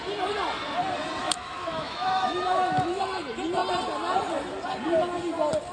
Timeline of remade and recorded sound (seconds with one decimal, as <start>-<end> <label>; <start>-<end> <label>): 0.0-1.2 recorded; 1.2-3.0 remade; 3.0-5.7 recorded